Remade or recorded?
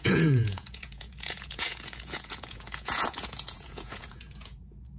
remade